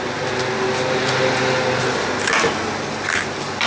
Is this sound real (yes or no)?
yes